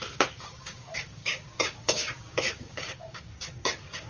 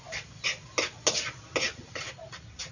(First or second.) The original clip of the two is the second